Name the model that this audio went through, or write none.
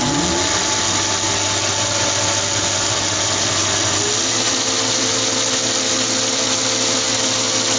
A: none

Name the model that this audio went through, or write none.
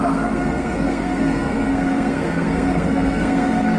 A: codec, SNAC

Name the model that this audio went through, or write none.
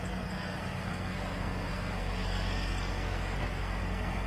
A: codec, SNAC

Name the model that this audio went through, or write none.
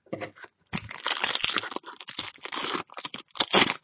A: none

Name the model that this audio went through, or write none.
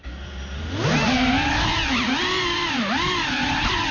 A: none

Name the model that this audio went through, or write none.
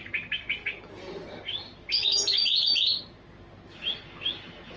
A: none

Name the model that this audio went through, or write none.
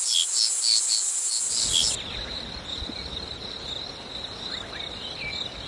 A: none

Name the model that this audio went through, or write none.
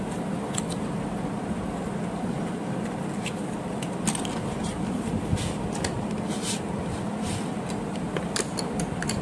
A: none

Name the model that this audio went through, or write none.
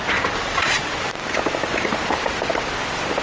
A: none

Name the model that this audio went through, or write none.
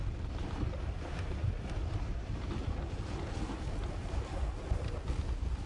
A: none